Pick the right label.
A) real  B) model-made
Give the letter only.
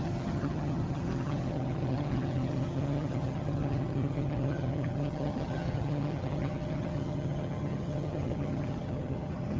B